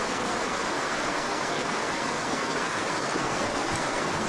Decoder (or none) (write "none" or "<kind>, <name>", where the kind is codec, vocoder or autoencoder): codec, SNAC